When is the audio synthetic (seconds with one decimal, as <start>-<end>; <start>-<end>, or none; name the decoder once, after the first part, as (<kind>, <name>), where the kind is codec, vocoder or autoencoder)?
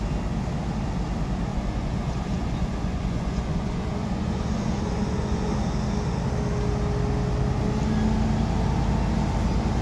1.5-5.5 (vocoder, Vocos)